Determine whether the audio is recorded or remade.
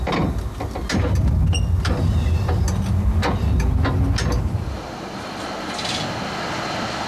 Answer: recorded